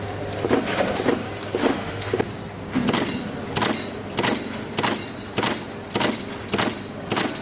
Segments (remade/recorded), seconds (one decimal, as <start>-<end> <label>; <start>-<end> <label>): 0.0-1.6 recorded; 1.6-2.2 remade; 2.2-7.4 recorded